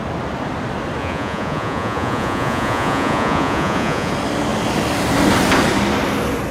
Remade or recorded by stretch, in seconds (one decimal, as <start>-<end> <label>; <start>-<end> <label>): 0.0-1.0 recorded; 1.0-4.1 remade; 4.1-6.5 recorded